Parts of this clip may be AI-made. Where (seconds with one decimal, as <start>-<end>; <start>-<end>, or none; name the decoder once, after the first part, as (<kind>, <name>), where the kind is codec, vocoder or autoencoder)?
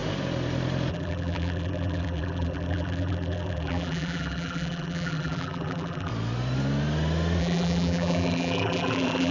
0.9-6.1 (vocoder, BigVGAN v2); 7.4-9.3